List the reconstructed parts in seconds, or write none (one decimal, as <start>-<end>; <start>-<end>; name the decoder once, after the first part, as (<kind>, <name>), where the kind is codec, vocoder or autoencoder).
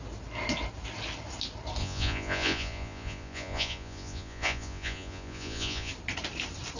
1.8-5.9 (vocoder, Vocos)